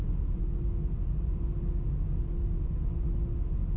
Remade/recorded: recorded